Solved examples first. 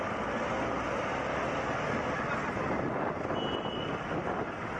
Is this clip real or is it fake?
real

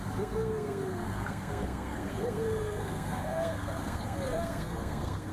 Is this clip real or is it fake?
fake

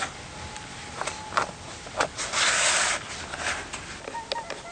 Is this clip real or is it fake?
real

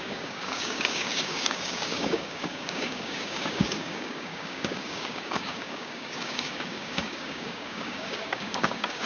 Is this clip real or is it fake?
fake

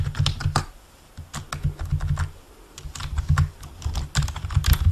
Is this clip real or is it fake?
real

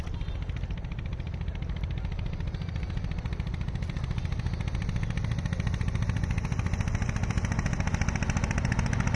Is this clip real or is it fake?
real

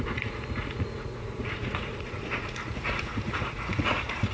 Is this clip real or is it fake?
fake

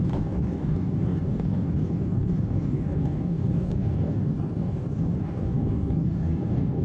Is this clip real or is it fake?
fake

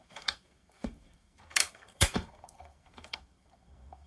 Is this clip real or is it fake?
fake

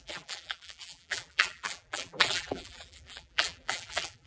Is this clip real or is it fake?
fake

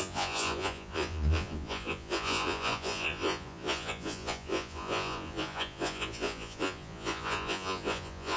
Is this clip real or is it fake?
fake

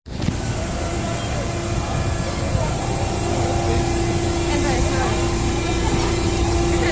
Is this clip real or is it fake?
real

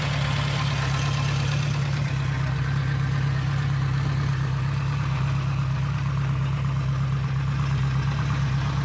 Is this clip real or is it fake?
real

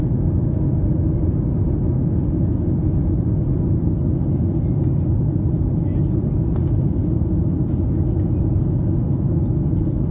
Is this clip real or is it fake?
real